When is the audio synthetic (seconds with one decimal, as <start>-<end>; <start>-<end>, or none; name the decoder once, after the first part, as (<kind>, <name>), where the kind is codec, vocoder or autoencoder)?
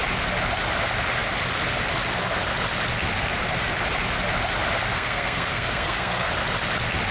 4.9-6.3 (codec, SNAC)